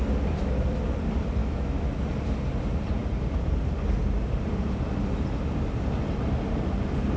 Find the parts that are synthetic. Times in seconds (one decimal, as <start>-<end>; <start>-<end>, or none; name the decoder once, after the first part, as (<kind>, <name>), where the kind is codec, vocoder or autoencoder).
1.4-2.0 (autoencoder, DAC-VAE)